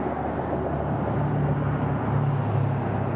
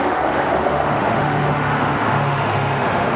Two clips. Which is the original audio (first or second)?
first